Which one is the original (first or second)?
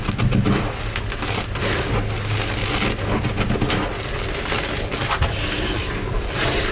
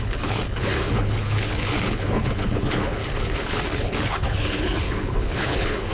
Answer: first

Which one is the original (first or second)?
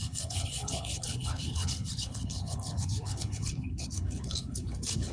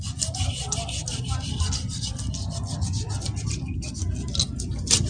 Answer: second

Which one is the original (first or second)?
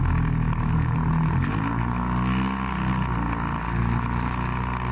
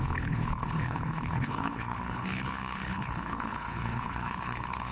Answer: first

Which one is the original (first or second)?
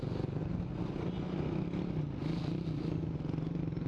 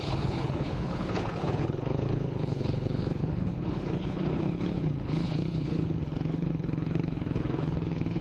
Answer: first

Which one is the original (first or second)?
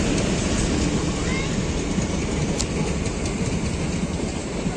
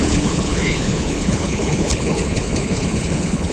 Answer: first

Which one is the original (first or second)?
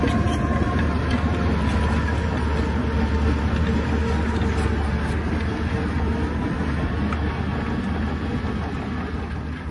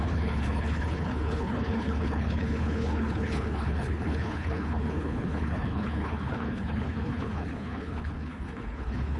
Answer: first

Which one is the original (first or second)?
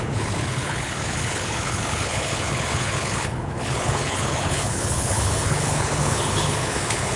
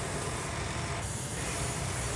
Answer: second